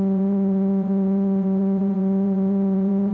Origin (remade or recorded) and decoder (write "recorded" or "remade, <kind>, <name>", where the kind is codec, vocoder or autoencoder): remade, vocoder, WaveNeXt